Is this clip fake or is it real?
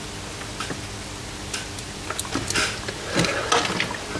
real